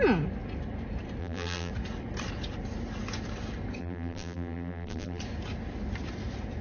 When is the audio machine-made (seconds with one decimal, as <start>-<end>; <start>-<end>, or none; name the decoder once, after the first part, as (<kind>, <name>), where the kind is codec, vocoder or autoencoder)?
1.2-1.7 (vocoder, BigVGAN v2); 3.8-5.2